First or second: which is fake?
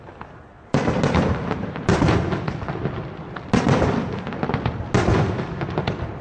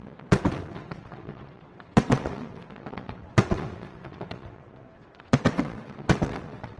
second